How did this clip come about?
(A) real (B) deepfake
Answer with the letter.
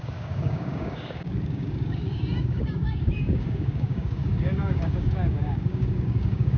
B